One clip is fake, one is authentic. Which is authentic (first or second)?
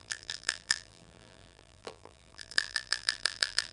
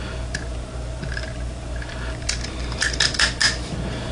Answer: second